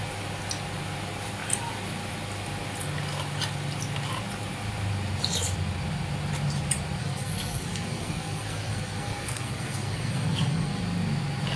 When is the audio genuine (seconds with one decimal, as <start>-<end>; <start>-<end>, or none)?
0.0-7.0; 10.8-11.6